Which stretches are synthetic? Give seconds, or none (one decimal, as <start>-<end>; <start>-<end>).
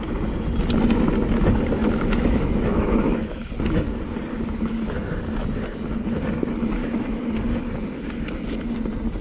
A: 1.8-3.5; 6.8-7.3